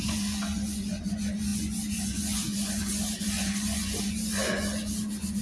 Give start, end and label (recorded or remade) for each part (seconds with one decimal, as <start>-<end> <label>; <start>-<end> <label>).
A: 0.0-5.4 remade